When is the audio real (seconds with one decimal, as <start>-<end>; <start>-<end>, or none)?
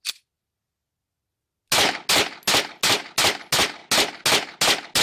0.0-5.0